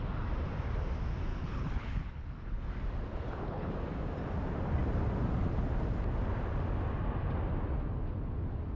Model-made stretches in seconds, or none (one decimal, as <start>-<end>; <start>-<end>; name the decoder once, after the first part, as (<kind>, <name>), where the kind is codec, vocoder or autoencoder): 1.3-2.7 (codec, HILCodec); 3.1-3.7